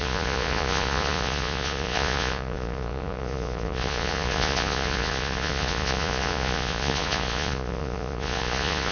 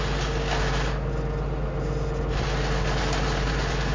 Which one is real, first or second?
second